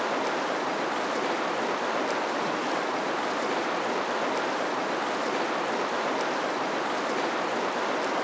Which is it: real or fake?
real